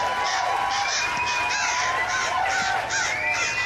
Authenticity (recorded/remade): recorded